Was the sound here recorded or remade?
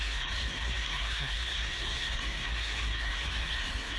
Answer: remade